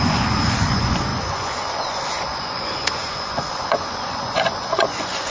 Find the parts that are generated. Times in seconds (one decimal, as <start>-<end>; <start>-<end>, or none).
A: 0.0-5.3